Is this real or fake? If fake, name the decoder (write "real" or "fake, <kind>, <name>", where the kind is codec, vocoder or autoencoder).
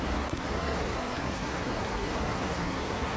fake, codec, SNAC